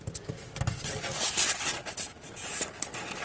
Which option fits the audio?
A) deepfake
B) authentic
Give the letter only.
B